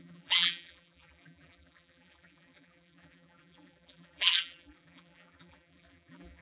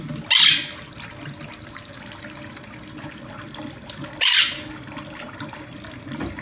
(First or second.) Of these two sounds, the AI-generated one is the first